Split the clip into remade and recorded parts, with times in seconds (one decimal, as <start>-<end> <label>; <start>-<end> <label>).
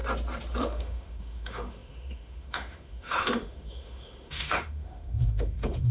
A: 0.0-0.6 recorded; 0.6-5.9 remade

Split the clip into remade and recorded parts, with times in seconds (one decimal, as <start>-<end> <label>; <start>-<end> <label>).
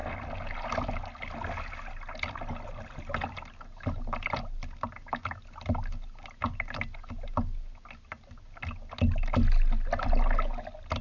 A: 0.0-11.0 recorded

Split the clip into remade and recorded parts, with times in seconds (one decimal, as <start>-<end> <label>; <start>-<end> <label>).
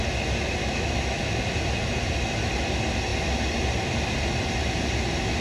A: 0.0-0.6 recorded; 0.6-1.2 remade; 1.2-5.4 recorded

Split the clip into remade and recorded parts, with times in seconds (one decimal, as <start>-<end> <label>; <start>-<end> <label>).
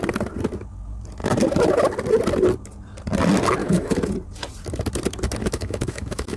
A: 0.0-3.6 recorded; 3.6-4.1 remade; 4.1-5.4 recorded; 5.4-6.4 remade